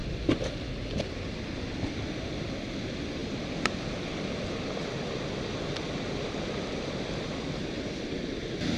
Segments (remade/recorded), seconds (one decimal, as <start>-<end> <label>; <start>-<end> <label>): 0.0-0.7 remade; 0.7-8.8 recorded